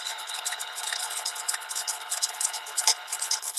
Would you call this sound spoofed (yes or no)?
yes